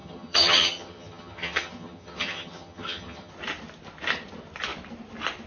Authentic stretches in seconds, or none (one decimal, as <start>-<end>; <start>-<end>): 3.3-5.5